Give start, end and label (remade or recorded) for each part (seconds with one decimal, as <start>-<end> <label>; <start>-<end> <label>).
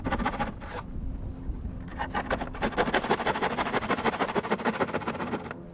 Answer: 0.0-5.7 recorded